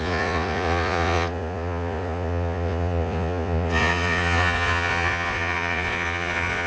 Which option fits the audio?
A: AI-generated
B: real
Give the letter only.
A